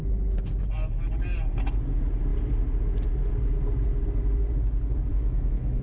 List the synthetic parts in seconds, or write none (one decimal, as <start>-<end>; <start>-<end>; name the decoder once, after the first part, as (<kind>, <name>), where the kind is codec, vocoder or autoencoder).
5.1-5.8 (autoencoder, DAC-VAE)